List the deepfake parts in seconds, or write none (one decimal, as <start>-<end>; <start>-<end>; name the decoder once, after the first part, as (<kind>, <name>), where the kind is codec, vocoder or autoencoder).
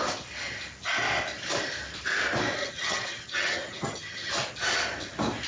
2.6-4.3 (vocoder, HiFi-GAN)